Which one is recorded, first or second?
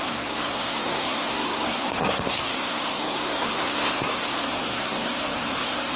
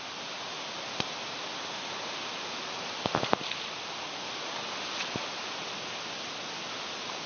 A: second